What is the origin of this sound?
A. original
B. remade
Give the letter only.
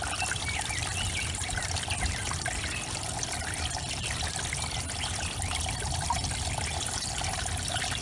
A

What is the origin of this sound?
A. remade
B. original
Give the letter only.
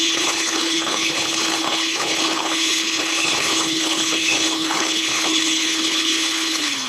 A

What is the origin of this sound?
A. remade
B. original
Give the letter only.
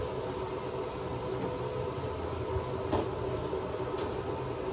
B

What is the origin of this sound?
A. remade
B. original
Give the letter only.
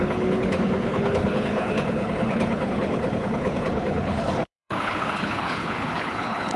A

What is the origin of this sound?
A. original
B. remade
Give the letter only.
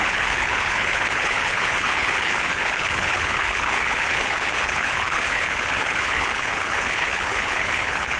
B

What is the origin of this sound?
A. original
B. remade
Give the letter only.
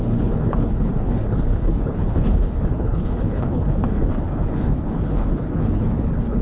B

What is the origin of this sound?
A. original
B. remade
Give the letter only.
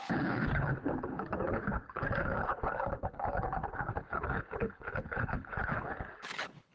B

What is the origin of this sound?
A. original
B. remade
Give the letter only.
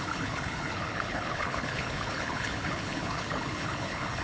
B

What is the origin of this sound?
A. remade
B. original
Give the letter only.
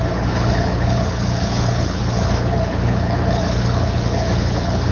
A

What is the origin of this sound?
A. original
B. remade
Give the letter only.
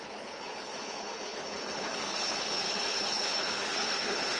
B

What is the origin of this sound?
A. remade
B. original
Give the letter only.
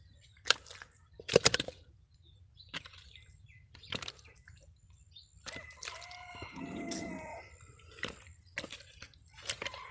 B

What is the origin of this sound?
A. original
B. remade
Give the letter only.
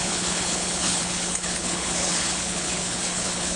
B